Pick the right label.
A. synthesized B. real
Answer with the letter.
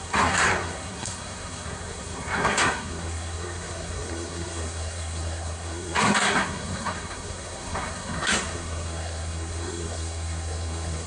A